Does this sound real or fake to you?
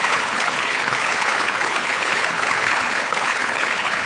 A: fake